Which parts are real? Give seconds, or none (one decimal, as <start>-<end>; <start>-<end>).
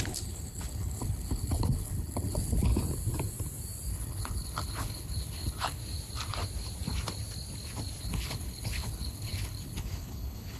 2.7-3.9; 5.8-8.0